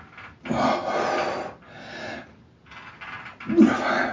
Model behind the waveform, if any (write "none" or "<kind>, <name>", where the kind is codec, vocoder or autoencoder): none